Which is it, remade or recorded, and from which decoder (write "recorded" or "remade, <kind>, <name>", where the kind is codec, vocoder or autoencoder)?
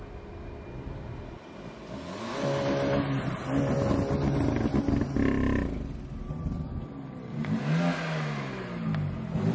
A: recorded